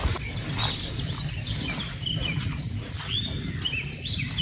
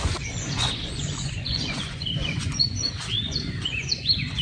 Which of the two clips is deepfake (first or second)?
second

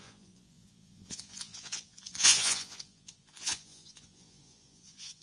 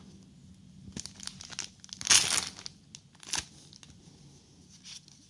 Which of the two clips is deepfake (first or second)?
first